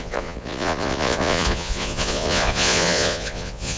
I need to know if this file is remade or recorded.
remade